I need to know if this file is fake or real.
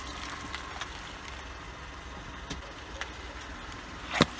real